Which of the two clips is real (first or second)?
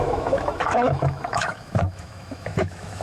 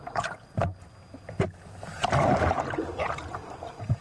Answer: second